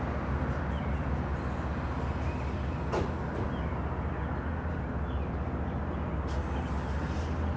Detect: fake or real real